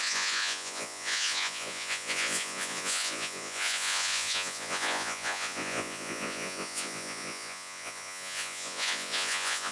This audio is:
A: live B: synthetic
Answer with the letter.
B